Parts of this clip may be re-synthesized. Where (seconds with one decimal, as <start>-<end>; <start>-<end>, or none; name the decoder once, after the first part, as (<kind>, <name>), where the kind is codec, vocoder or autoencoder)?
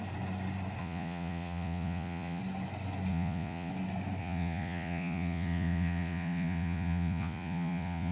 0.8-2.4 (vocoder, Vocos); 3.1-3.7; 4.2-8.1